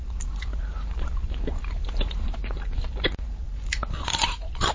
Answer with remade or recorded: remade